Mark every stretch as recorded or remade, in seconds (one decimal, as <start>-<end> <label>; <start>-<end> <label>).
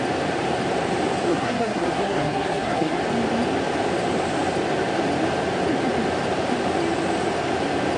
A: 0.0-1.3 recorded; 1.3-3.0 remade; 3.0-8.0 recorded